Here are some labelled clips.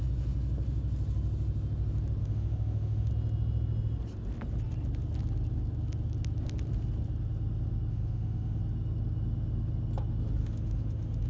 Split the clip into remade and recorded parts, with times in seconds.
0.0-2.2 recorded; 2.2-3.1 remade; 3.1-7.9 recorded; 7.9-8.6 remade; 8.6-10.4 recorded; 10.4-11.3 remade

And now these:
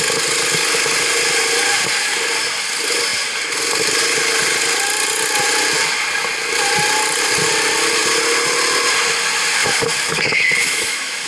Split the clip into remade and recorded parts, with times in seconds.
0.0-10.6 recorded; 10.6-11.3 remade

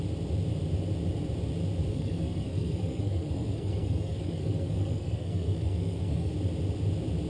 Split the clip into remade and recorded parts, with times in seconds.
0.0-1.9 recorded; 1.9-6.3 remade; 6.3-7.3 recorded

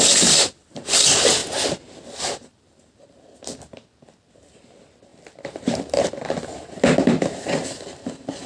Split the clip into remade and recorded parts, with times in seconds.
0.0-8.5 recorded